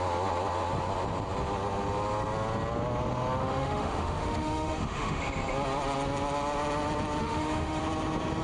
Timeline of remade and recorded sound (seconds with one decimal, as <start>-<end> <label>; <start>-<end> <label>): 0.0-3.4 recorded; 3.4-5.2 remade; 5.2-7.2 recorded; 7.2-7.8 remade; 7.8-8.4 recorded